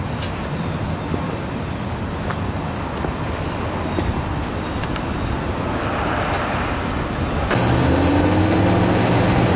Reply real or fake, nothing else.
real